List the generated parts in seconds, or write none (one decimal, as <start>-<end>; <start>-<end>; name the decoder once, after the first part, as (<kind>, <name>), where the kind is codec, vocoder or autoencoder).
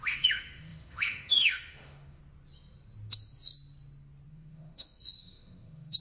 0.0-2.2 (autoencoder, DAC-VAE); 4.3-6.0